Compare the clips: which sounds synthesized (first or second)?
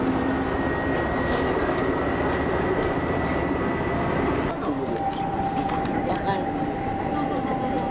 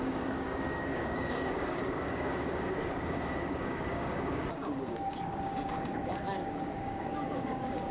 second